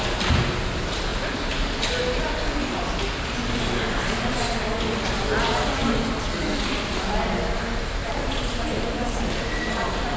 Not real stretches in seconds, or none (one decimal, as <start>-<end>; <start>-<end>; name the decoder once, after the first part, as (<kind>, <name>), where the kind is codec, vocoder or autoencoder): 8.0-9.2 (vocoder, BigVGAN v2)